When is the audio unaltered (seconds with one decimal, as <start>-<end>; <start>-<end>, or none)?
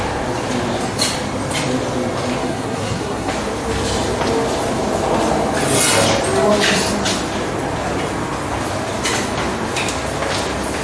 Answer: 0.0-2.4; 3.3-10.8